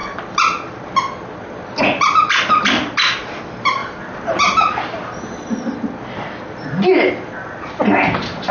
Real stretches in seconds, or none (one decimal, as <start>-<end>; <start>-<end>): 0.0-8.5